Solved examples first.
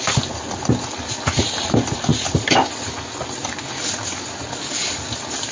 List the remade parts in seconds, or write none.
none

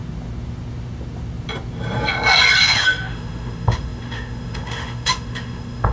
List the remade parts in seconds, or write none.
2.6-5.9 (autoencoder, DAC-VAE)

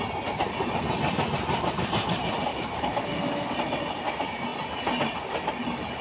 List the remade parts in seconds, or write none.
2.5-3.5 (autoencoder, DAC-VAE)

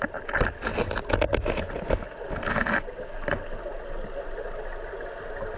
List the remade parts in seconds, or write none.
none

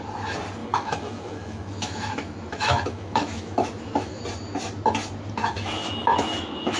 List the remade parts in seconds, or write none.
0.6-4.2 (autoencoder, DAC-VAE); 5.4-6.8

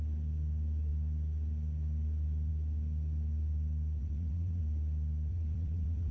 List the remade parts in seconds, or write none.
4.0-4.6 (vocoder, WaveNeXt); 5.3-6.1

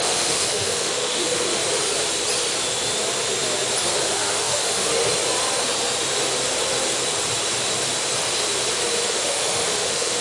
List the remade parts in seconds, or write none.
0.0-1.6 (autoencoder, DAC-VAE); 4.1-4.9; 9.1-10.2

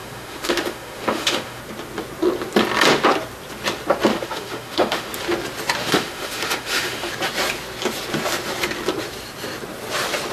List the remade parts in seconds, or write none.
0.0-1.6 (autoencoder, DAC-VAE); 4.1-5.1; 5.8-7.1